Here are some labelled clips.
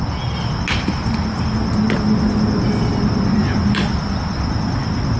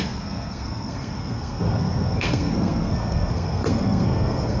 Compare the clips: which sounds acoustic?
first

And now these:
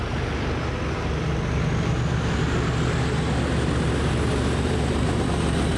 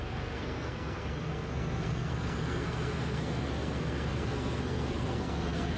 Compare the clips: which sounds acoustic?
first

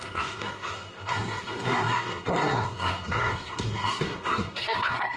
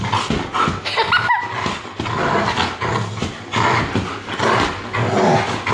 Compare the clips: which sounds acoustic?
second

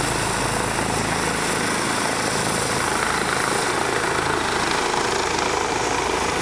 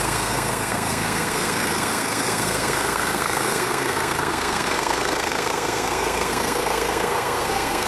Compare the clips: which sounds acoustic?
first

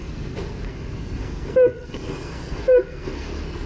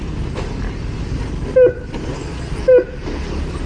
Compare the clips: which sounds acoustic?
second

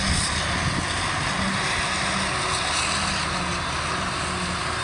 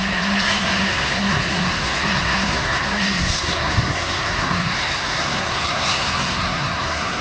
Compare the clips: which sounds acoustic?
first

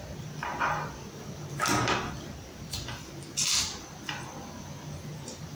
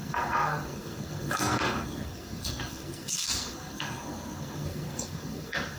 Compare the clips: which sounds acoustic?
first